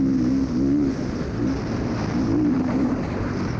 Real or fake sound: real